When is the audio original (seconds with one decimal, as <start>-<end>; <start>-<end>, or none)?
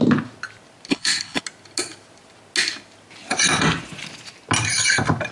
0.0-0.9; 1.4-5.3